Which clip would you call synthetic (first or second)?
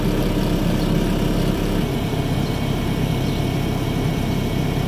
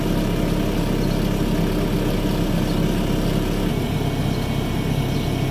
first